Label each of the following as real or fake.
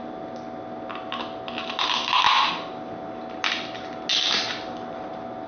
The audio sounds real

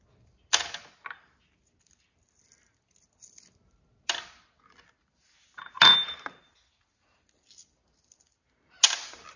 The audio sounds real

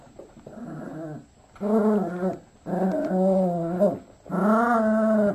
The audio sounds real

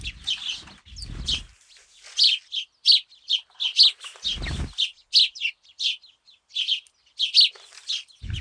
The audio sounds real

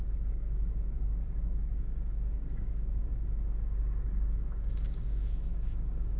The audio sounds fake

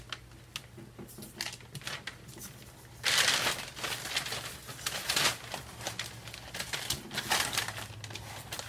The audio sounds real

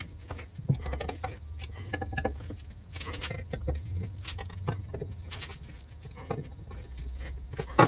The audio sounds real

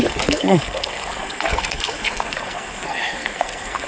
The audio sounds fake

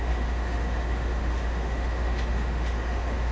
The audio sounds fake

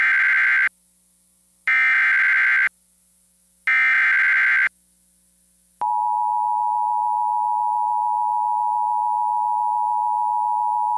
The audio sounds real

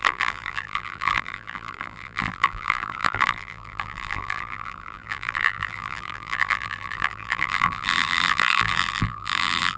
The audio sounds fake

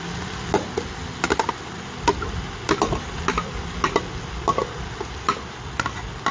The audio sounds real